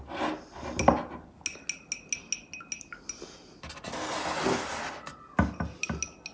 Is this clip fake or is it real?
real